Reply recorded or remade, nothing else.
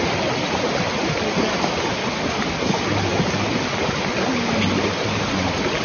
recorded